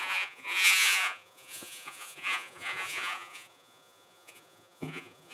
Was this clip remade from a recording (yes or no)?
yes